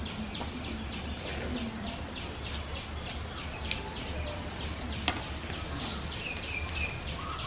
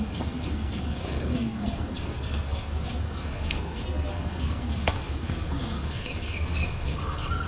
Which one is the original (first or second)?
first